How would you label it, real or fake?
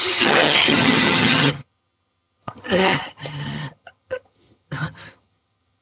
fake